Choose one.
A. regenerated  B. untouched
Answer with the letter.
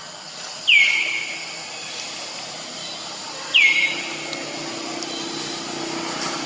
B